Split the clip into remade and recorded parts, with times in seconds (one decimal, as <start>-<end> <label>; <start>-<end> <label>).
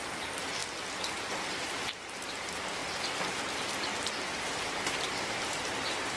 0.0-0.6 remade; 0.6-1.5 recorded; 1.5-2.8 remade; 2.8-4.3 recorded; 4.3-6.2 remade